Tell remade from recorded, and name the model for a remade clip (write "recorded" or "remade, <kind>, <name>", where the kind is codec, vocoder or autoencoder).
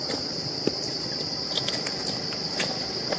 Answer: recorded